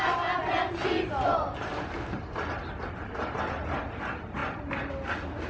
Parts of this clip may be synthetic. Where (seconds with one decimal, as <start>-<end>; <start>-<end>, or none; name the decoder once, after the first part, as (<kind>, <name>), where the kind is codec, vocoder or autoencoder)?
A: none